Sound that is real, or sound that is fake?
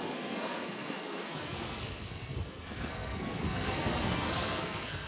fake